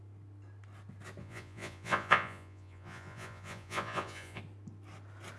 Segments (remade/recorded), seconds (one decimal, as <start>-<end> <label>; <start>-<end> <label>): 0.0-1.2 recorded; 1.2-4.4 remade; 4.4-5.4 recorded